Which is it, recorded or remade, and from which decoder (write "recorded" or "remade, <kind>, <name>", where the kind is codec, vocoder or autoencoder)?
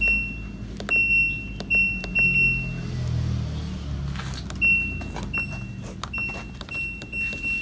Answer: recorded